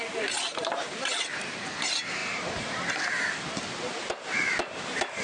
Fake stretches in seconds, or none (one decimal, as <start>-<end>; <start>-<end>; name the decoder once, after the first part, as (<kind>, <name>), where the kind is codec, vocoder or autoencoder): 0.0-5.2 (vocoder, BigVGAN v2)